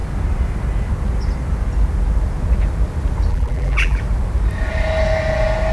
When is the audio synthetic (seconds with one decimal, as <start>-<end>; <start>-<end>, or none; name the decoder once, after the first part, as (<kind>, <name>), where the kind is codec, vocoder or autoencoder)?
3.3-4.0 (vocoder, BigVGAN v2)